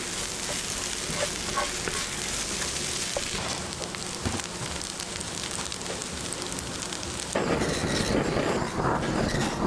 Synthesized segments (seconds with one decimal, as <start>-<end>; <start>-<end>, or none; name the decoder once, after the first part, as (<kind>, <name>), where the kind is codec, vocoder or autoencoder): none